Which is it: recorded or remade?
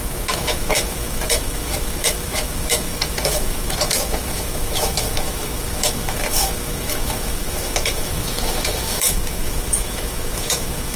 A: remade